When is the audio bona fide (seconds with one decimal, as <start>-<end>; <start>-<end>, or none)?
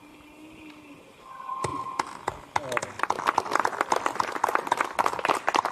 0.0-5.7